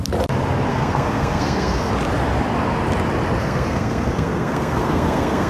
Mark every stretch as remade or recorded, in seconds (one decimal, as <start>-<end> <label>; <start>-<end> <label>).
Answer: 0.0-0.7 recorded; 0.7-1.9 remade; 1.9-3.4 recorded; 3.4-5.5 remade